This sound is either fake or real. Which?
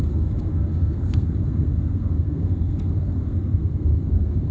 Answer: fake